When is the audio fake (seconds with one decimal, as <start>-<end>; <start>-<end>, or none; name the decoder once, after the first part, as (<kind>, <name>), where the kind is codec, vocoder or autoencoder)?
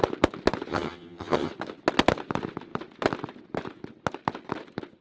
0.7-1.5 (vocoder, HiFi-GAN)